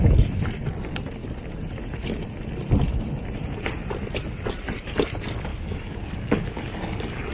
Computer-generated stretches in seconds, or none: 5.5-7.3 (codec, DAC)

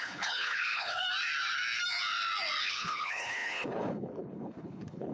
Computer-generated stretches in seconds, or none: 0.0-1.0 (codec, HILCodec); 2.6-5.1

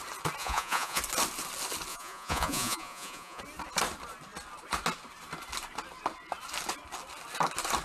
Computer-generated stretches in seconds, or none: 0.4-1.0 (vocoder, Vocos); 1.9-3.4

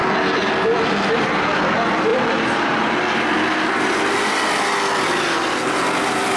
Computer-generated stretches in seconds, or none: 2.1-2.9 (vocoder, BigVGAN v2)

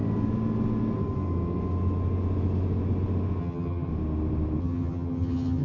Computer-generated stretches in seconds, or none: 3.4-3.9 (vocoder, HiFi-GAN); 4.6-5.6

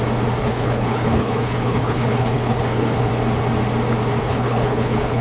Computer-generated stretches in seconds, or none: 0.4-3.1 (codec, HILCodec); 4.2-5.2

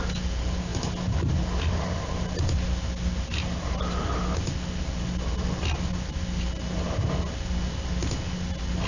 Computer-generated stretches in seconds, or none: none